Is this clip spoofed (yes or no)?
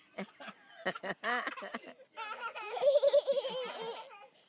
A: no